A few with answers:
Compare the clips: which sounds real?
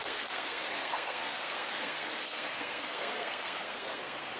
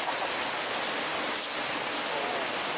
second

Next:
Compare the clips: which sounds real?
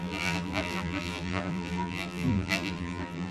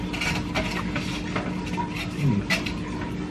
second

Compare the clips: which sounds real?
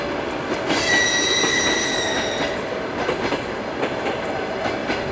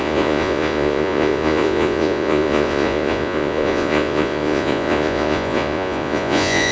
first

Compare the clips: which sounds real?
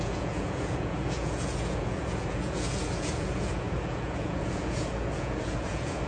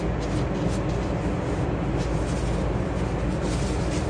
second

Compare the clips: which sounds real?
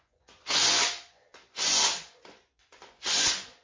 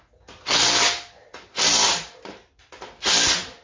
second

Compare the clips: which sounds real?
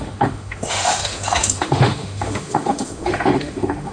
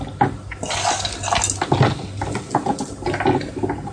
second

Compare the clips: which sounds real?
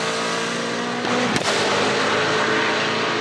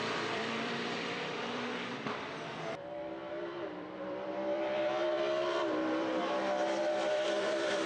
first